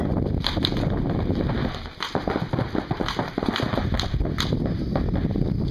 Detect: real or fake real